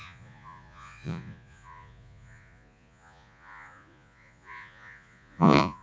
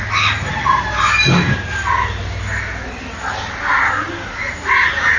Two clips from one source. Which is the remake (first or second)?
first